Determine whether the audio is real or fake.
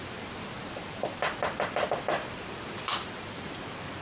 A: fake